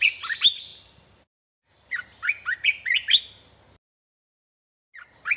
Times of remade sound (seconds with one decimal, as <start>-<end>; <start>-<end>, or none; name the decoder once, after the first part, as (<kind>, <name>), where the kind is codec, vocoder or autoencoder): none